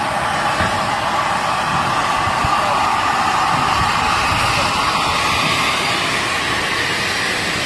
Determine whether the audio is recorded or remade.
recorded